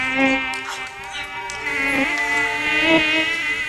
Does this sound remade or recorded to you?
remade